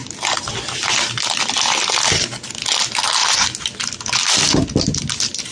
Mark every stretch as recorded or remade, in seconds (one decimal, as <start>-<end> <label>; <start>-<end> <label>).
0.0-5.5 recorded